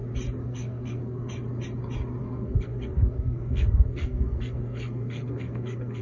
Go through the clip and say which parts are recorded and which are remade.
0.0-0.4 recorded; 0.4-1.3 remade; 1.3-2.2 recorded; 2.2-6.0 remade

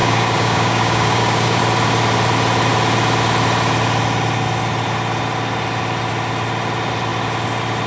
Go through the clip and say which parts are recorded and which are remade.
0.0-1.6 remade; 1.6-7.9 recorded

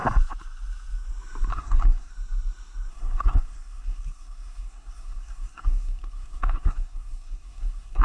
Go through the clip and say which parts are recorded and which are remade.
0.0-1.5 recorded; 1.5-2.1 remade; 2.1-2.9 recorded; 2.9-8.0 remade

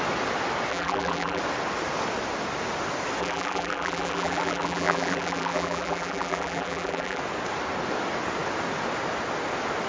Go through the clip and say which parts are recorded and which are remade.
0.0-0.7 recorded; 0.7-1.4 remade; 1.4-3.2 recorded; 3.2-7.2 remade; 7.2-9.9 recorded

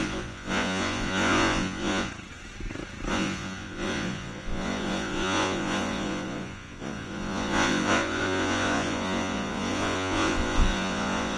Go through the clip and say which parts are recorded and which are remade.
0.0-2.1 remade; 2.1-3.1 recorded; 3.1-11.4 remade

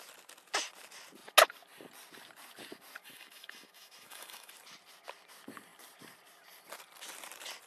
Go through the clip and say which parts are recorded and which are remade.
0.0-3.0 recorded; 3.0-4.5 remade; 4.5-7.7 recorded

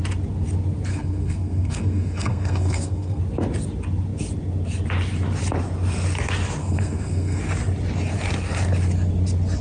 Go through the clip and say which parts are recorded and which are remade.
0.0-0.9 recorded; 0.9-3.2 remade; 3.2-6.6 recorded; 6.6-7.4 remade; 7.4-9.6 recorded

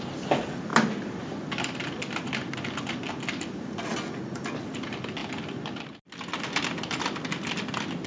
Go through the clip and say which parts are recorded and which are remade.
0.0-8.1 recorded